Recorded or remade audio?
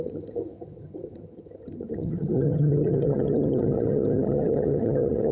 remade